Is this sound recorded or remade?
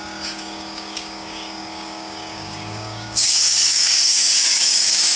remade